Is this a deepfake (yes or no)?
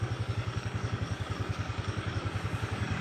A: yes